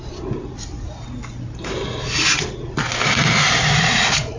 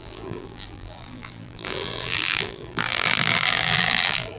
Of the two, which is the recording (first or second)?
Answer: first